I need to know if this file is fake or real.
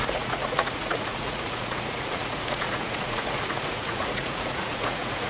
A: fake